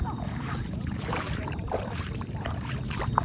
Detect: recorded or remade remade